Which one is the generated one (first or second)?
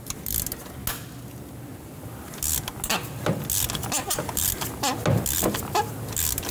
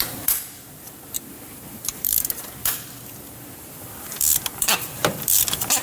second